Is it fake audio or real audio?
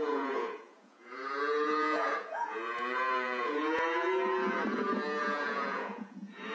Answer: fake